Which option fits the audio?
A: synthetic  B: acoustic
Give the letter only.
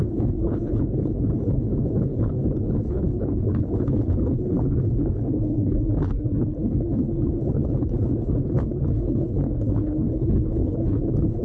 A